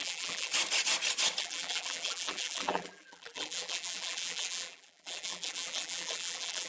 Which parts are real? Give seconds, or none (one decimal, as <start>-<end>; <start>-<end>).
0.5-1.4